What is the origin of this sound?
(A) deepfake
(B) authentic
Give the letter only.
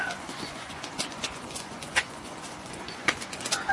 A